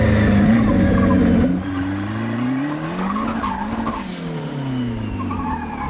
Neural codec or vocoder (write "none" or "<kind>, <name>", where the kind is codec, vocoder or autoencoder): none